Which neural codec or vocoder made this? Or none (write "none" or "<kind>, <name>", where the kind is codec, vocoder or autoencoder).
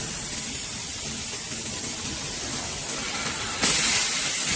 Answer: vocoder, BigVGAN v2